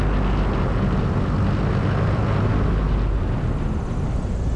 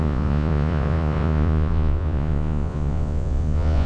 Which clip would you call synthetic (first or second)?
second